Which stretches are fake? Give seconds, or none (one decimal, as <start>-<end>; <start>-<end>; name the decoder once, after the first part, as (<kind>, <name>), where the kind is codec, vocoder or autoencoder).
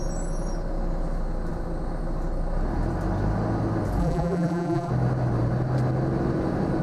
4.0-4.9 (vocoder, BigVGAN v2)